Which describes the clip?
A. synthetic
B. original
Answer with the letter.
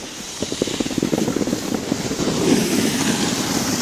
B